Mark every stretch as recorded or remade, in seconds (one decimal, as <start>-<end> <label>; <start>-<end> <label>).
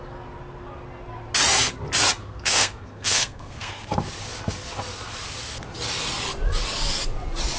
0.0-2.2 recorded; 2.2-3.7 remade; 3.7-7.6 recorded